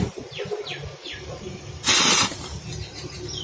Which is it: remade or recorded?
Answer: remade